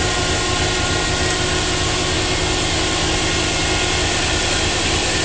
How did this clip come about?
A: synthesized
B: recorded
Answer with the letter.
B